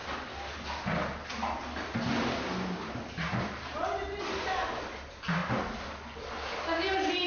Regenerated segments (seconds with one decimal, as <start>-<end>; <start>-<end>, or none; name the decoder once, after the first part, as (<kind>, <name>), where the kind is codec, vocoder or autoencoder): none